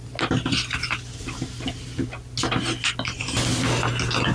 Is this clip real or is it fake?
real